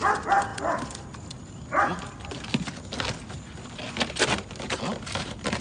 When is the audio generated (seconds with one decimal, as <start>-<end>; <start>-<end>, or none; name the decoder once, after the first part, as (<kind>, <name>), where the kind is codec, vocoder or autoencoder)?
none